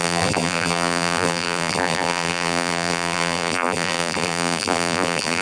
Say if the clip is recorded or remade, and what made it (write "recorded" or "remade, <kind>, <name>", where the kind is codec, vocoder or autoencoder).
remade, vocoder, BigVGAN v2